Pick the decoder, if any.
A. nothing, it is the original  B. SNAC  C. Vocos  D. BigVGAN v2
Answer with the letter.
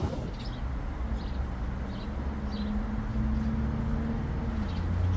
A